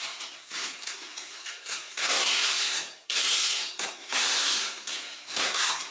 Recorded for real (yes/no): no